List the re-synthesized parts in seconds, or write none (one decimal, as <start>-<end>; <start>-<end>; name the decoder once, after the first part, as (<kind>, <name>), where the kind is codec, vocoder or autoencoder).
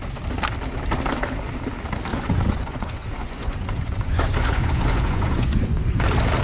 2.1-5.9 (vocoder, Vocos)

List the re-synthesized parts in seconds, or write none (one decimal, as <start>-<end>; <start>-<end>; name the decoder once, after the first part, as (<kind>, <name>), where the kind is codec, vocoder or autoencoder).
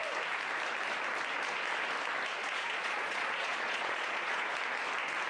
2.4-4.5 (vocoder, Vocos)